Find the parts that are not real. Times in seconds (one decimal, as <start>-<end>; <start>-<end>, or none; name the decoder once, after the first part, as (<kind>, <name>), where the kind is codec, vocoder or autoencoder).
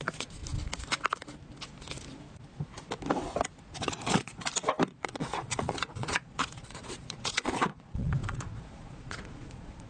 0.0-0.4 (vocoder, Vocos); 3.6-4.3; 4.9-9.9